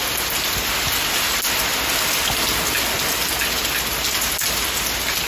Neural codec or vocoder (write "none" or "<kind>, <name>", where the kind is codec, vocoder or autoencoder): none